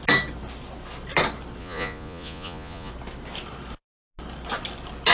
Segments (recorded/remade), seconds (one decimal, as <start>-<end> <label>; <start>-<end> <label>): 0.0-1.6 recorded; 1.6-2.9 remade; 2.9-5.1 recorded